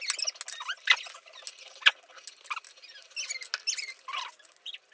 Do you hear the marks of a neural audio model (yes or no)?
no